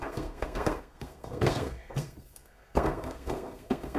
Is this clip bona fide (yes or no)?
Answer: no